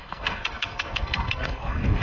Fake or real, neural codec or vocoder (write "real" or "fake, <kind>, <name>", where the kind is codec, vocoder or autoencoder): fake, codec, SNAC